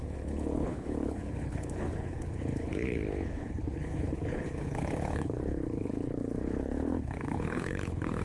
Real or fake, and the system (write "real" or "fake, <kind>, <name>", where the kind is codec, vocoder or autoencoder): fake, codec, HILCodec